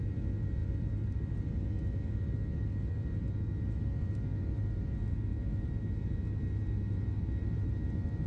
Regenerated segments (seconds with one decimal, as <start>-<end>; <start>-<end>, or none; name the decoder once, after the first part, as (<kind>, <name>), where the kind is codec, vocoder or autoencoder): none